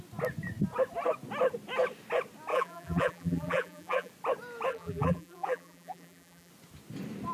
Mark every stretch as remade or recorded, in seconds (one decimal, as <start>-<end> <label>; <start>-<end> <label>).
0.0-2.5 recorded; 2.5-4.1 remade; 4.1-4.7 recorded; 4.7-6.5 remade; 6.5-7.3 recorded